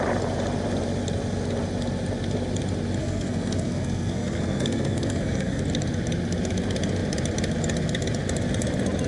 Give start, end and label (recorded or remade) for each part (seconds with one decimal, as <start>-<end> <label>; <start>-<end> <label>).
0.0-3.0 recorded; 3.0-5.6 remade; 5.6-9.1 recorded